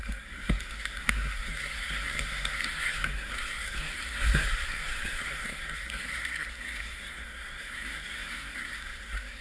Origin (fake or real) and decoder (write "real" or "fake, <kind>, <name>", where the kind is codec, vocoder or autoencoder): fake, codec, SNAC